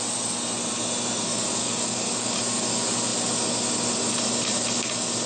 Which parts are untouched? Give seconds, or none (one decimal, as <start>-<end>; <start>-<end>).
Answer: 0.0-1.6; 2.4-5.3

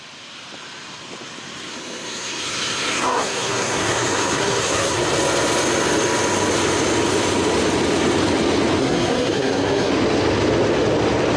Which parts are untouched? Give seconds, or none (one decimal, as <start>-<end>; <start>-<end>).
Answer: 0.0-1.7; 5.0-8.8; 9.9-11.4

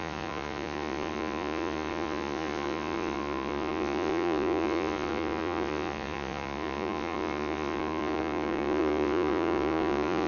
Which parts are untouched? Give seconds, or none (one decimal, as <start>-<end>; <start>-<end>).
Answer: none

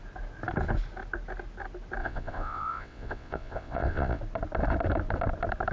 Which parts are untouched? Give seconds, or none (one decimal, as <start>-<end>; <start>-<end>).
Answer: 0.0-2.0; 4.2-5.7

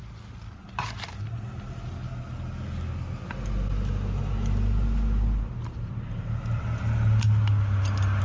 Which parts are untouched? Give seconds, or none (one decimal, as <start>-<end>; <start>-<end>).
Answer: 0.0-8.2